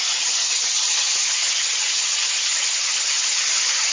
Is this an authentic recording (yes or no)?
no